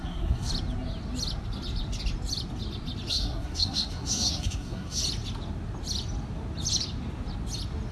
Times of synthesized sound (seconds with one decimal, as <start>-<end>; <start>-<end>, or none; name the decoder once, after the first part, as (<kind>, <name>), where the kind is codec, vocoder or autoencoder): 0.0-0.5 (codec, SNAC); 3.1-5.0